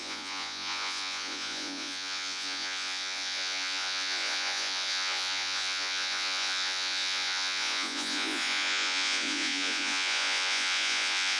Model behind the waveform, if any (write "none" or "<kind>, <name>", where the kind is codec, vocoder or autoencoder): vocoder, Vocos